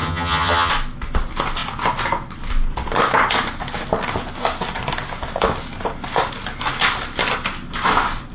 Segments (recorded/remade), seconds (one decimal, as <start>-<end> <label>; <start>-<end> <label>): 0.0-0.7 remade; 0.7-8.3 recorded